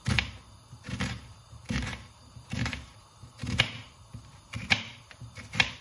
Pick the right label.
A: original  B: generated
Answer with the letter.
B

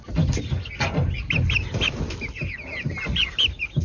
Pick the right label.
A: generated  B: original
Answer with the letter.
B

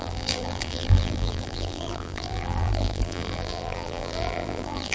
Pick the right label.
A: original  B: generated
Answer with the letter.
B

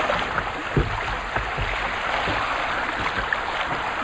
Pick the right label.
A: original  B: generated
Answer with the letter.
A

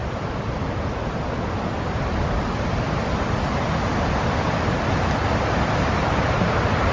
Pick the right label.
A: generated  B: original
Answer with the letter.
B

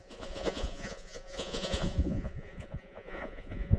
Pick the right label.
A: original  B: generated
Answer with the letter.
B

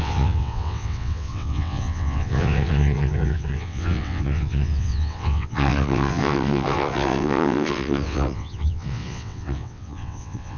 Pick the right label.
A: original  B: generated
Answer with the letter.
B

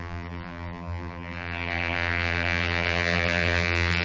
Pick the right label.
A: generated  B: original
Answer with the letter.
A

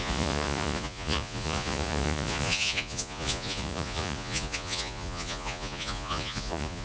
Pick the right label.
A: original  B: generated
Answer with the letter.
B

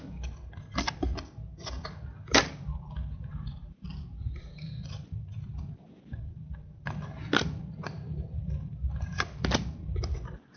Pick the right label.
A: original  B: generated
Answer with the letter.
B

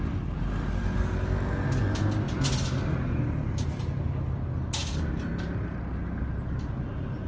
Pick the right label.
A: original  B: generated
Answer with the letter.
A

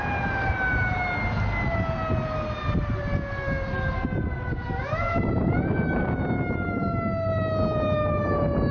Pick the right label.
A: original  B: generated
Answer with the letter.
A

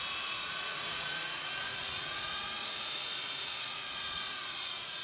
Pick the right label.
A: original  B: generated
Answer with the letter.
B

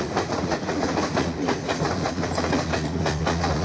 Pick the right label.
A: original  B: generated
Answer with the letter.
B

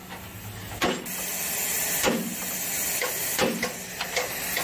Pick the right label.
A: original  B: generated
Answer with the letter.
A